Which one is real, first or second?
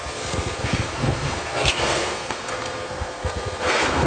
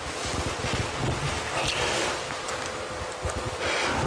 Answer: second